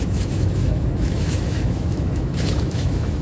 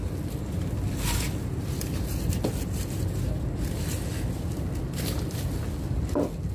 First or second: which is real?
second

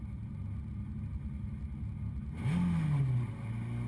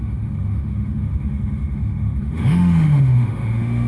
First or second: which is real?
first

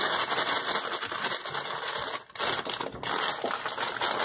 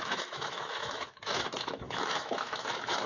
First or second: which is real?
first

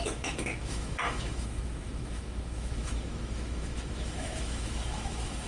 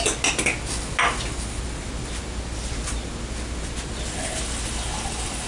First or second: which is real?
second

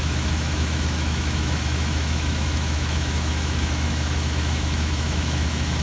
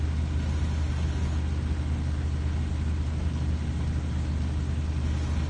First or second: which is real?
second